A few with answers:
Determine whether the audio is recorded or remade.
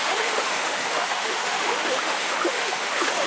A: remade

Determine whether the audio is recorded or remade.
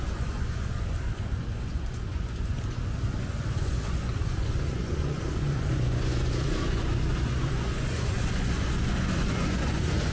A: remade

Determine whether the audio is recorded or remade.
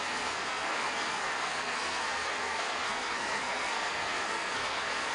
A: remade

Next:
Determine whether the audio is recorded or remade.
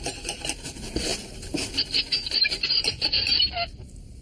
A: recorded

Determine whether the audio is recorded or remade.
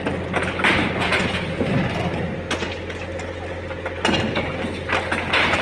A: recorded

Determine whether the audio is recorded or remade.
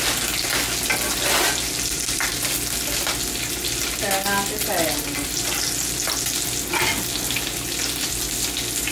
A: recorded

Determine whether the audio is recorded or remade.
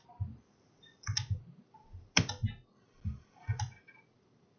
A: recorded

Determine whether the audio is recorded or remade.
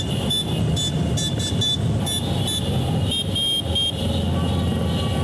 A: recorded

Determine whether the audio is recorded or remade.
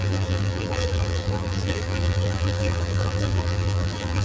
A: remade